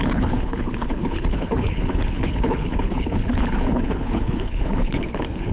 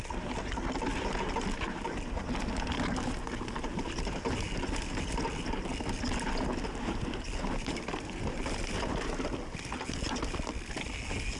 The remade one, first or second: first